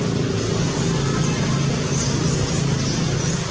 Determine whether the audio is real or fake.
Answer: real